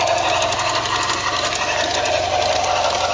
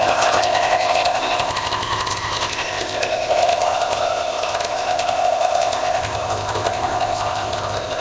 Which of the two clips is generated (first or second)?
second